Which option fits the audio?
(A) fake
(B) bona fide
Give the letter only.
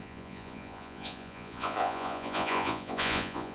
A